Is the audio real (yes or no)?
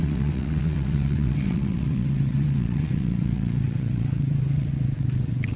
no